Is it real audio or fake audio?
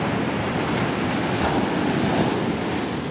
real